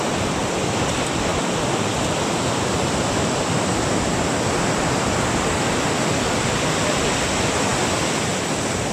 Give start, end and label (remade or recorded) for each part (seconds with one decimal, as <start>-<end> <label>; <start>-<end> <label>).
0.0-8.9 recorded

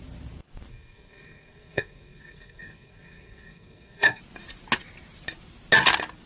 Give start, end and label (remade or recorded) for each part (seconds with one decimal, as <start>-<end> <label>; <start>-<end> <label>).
0.0-0.7 recorded; 0.7-4.2 remade; 4.2-6.3 recorded